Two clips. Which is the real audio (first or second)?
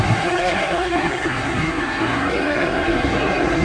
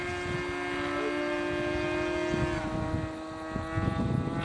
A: second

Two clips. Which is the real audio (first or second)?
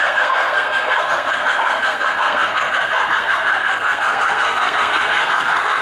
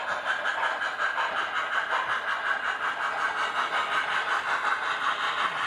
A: second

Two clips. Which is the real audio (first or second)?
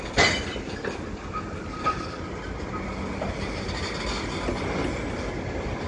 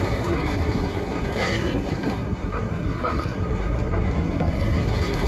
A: first